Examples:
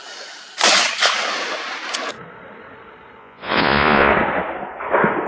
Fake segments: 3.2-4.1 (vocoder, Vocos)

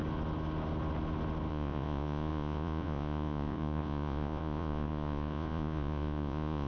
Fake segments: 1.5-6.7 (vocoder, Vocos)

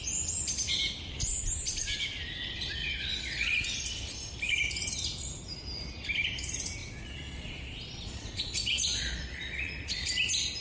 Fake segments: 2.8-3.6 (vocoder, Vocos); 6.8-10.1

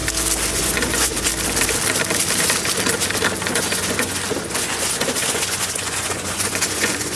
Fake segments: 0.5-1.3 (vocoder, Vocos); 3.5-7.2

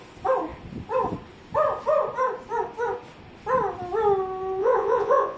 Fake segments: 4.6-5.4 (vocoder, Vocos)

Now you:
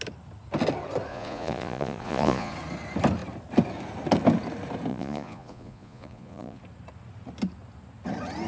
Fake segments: 1.1-2.5 (vocoder, Vocos); 4.9-6.6